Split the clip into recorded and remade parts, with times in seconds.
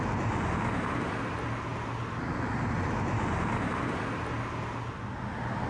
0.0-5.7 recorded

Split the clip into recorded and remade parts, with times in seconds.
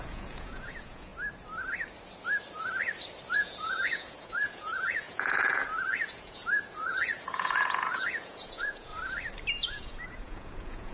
0.0-1.1 remade; 1.1-3.3 recorded; 3.3-8.9 remade; 8.9-9.5 recorded; 9.5-10.9 remade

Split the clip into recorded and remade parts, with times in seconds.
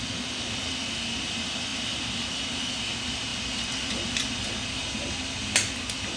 0.0-6.2 recorded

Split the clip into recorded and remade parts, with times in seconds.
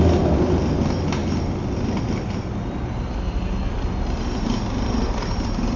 0.0-5.8 recorded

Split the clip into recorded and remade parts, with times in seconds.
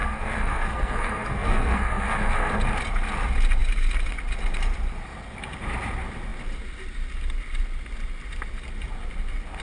0.0-2.5 remade; 2.5-9.6 recorded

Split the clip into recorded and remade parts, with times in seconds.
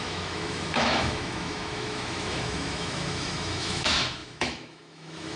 0.0-5.4 remade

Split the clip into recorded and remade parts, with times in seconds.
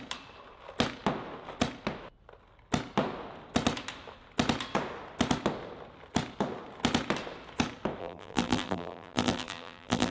0.0-8.0 recorded; 8.0-10.1 remade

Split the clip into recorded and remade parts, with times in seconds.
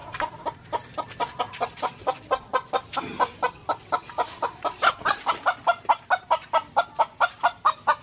0.0-2.5 recorded; 2.5-6.5 remade; 6.5-8.0 recorded